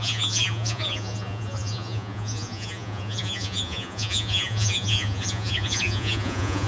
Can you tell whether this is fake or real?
fake